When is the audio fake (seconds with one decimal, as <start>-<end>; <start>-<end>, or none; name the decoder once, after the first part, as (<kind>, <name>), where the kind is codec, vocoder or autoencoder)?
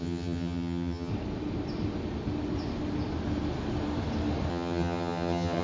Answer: 0.0-1.1 (vocoder, HiFi-GAN); 4.5-5.6